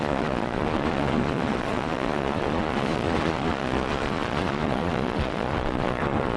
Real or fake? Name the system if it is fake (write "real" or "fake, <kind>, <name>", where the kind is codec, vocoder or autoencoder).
fake, vocoder, Vocos